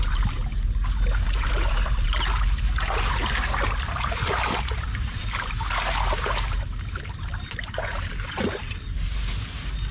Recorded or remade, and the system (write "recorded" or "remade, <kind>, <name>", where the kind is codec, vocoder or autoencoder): remade, vocoder, BigVGAN v2